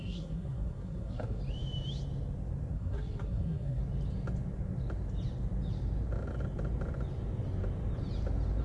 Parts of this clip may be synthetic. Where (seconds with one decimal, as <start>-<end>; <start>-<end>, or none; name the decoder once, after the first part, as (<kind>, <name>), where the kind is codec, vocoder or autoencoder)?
0.0-1.4 (codec, SNAC); 2.7-3.8